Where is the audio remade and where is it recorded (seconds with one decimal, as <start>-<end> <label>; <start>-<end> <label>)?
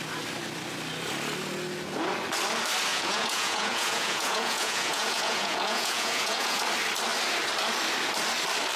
0.0-2.9 recorded; 2.9-6.6 remade; 6.6-8.8 recorded